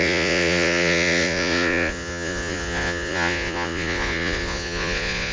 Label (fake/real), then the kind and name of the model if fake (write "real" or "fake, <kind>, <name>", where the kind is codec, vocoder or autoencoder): fake, vocoder, Vocos